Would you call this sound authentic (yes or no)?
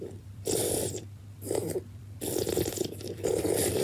no